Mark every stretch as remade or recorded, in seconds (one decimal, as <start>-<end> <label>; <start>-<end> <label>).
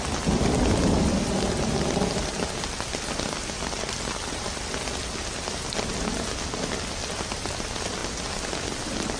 0.0-9.2 recorded